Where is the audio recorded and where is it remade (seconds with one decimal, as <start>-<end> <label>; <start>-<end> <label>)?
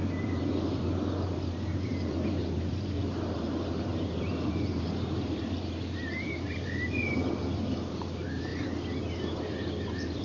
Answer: 0.0-8.5 remade; 8.5-9.0 recorded; 9.0-10.2 remade